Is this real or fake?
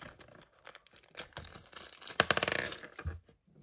real